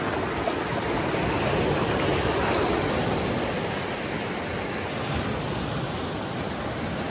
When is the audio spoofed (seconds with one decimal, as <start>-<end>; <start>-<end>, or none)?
none